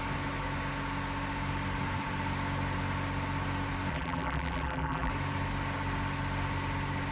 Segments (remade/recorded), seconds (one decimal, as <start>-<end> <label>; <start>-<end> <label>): 0.0-3.9 recorded; 3.9-5.1 remade; 5.1-7.1 recorded